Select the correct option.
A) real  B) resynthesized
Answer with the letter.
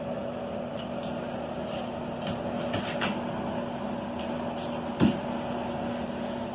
A